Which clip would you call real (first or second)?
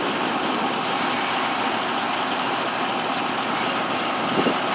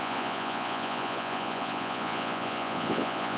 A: first